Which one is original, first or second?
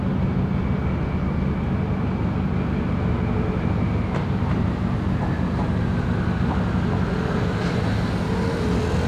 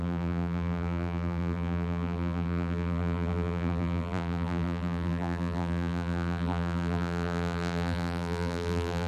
first